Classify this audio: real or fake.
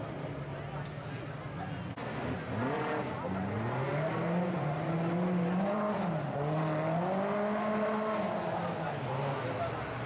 real